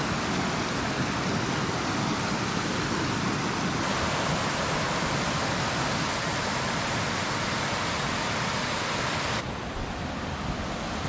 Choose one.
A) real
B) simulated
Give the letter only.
A